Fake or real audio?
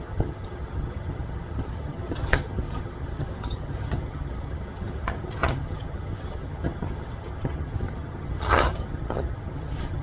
fake